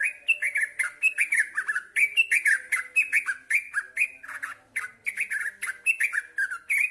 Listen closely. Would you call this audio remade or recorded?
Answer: recorded